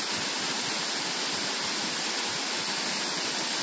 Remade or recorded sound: recorded